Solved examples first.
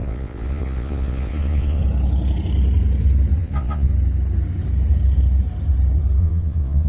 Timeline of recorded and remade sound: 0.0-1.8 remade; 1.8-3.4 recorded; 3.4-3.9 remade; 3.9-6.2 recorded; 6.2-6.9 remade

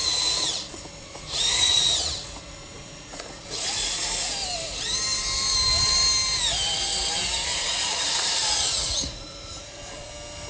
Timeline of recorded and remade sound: 0.0-4.2 remade; 4.2-7.5 recorded; 7.5-10.1 remade; 10.1-10.5 recorded

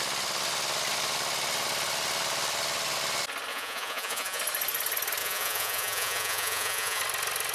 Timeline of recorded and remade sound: 0.0-3.5 recorded; 3.5-4.4 remade; 4.4-5.2 recorded; 5.2-7.0 remade; 7.0-7.5 recorded

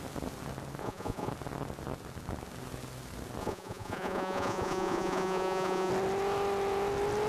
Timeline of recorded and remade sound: 0.0-0.8 recorded; 0.8-1.3 remade; 1.3-3.4 recorded; 3.4-5.9 remade; 5.9-7.3 recorded

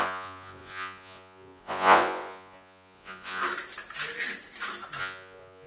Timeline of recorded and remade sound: 0.0-3.4 remade; 3.4-5.0 recorded; 5.0-5.7 remade

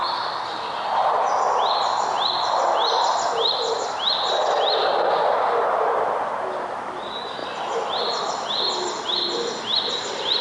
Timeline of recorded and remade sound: 0.0-10.4 recorded

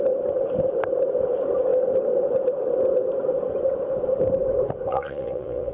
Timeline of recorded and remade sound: 0.0-4.9 recorded; 4.9-5.7 remade

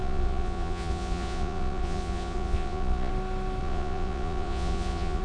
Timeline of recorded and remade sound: 0.0-3.1 remade; 3.1-3.6 recorded; 3.6-5.2 remade